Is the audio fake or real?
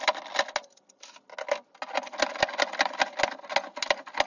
real